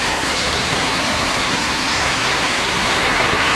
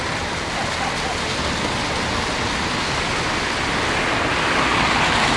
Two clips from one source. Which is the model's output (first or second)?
first